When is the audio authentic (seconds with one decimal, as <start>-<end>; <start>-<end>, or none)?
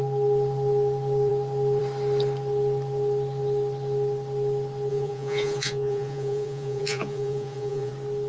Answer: 0.0-4.9; 7.9-8.3